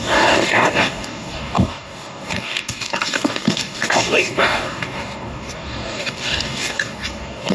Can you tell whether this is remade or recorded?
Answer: remade